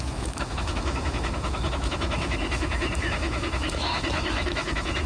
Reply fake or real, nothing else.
fake